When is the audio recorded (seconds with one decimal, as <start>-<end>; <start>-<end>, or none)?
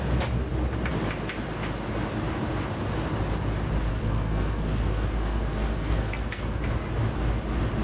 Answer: 0.0-3.9; 6.6-7.8